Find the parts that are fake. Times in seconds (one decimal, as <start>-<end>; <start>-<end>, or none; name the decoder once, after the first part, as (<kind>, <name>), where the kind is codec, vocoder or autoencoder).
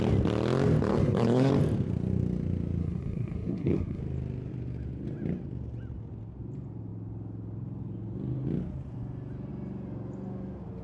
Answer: 0.9-1.5 (codec, SNAC); 2.8-4.0